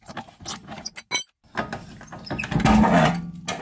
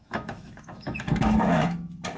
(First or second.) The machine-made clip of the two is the second